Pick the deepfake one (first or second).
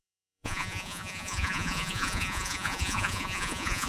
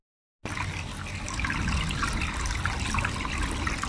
first